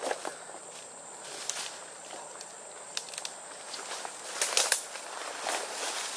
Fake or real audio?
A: real